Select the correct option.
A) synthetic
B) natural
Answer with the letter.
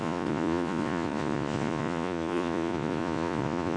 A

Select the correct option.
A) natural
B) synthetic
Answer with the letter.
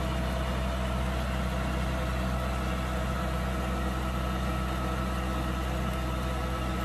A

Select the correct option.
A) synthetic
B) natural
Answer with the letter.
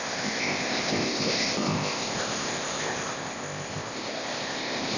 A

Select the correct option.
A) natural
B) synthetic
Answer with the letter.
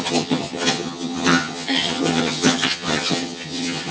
B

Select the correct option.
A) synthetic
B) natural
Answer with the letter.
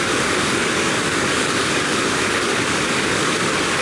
A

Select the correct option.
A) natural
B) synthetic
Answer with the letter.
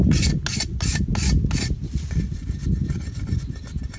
A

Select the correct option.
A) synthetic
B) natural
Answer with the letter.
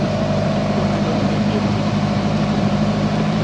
A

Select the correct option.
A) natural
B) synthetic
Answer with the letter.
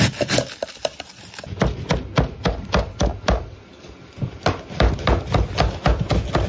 A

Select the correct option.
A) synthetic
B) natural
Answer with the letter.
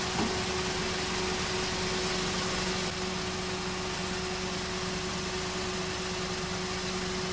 B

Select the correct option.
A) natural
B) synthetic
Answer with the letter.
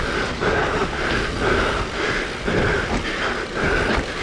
A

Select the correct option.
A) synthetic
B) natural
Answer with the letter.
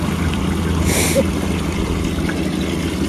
B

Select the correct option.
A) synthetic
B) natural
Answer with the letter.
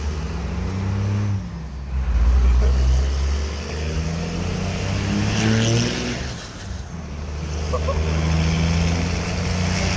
B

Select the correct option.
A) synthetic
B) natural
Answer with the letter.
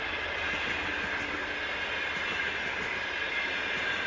B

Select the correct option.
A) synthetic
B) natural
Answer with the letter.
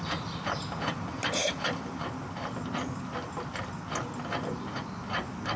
B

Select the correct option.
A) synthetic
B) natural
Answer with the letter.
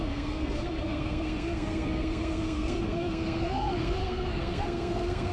A